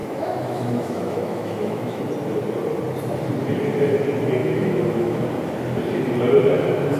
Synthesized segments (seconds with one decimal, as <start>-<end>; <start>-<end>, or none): 0.0-2.0; 4.4-5.2